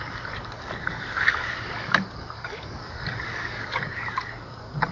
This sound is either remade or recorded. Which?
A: remade